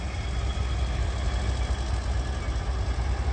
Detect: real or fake real